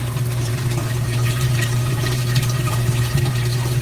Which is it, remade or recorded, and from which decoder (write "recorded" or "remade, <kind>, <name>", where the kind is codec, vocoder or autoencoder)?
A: remade, vocoder, BigVGAN v2